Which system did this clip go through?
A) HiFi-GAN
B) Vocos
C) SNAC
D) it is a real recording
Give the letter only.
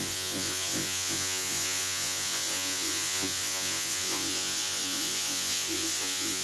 B